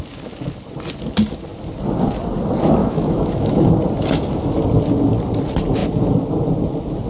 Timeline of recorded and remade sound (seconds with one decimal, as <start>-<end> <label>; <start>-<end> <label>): 0.0-2.8 recorded; 2.8-3.7 remade; 3.7-7.1 recorded